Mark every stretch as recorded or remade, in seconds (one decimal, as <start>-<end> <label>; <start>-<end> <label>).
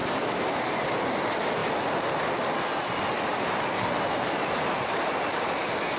0.0-0.8 remade; 0.8-3.3 recorded; 3.3-4.9 remade; 4.9-6.0 recorded